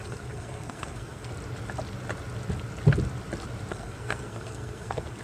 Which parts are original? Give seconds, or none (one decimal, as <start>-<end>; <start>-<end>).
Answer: 1.3-3.7